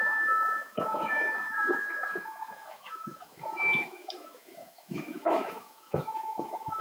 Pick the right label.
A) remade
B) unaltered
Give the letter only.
A